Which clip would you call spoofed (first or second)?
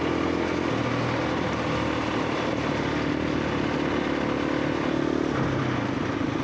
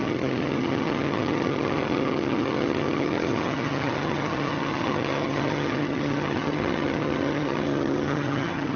second